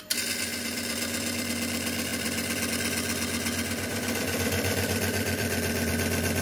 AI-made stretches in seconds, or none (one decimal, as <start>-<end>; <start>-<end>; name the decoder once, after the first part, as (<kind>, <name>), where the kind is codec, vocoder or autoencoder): 0.5-1.5 (vocoder, BigVGAN v2); 2.1-2.7; 3.9-5.9